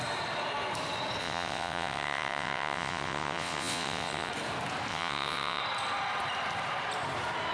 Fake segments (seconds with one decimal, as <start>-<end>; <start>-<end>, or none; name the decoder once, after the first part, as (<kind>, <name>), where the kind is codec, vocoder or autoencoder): 1.2-4.3 (vocoder, WaveNeXt); 4.9-5.6